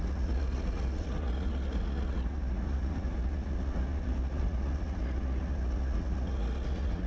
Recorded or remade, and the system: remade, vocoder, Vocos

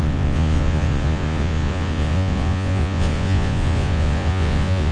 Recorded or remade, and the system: remade, vocoder, Vocos